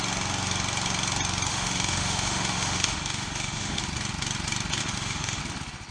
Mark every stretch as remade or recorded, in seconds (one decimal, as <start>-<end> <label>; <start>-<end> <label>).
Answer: 0.0-1.5 recorded; 1.5-3.8 remade; 3.8-4.8 recorded; 4.8-5.4 remade; 5.4-5.9 recorded